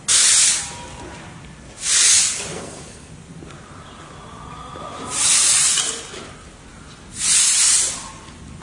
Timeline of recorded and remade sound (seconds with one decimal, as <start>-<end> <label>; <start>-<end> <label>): 0.0-2.5 recorded; 2.5-3.1 remade; 3.1-8.6 recorded